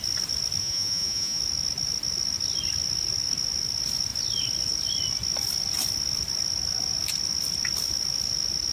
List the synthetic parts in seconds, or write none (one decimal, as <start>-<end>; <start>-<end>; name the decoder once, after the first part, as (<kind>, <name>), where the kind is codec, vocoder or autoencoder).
0.6-1.4 (vocoder, Vocos)